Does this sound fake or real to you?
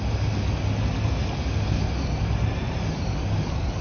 real